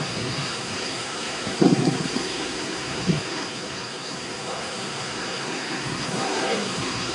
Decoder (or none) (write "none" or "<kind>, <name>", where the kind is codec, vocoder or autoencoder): codec, SNAC